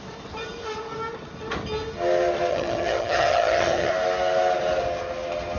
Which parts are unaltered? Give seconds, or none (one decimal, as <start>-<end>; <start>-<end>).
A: 0.0-2.5; 3.9-5.6